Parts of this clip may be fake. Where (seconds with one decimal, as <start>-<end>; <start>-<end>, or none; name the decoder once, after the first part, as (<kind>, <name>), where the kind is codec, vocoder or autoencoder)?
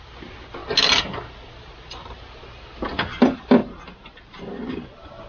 3.6-5.3 (vocoder, BigVGAN v2)